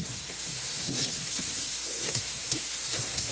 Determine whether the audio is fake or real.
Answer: fake